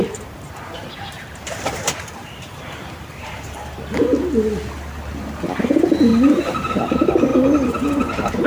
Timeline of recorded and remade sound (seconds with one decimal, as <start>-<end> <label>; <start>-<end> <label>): 0.0-3.8 remade; 3.8-8.5 recorded